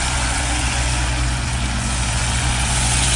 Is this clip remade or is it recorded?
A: remade